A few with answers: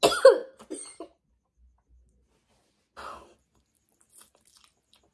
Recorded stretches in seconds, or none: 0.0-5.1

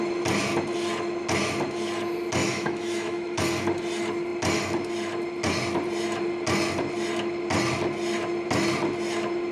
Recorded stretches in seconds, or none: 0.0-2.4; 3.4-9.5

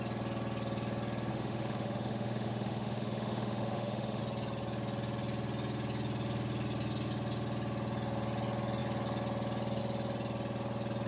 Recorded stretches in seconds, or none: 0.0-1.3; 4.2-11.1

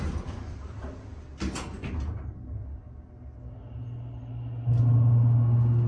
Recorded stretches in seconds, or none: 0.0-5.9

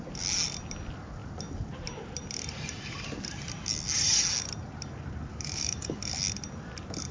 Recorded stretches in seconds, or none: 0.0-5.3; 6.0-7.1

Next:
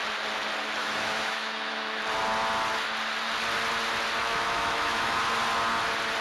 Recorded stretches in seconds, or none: 0.0-0.8; 2.0-4.2; 5.2-6.2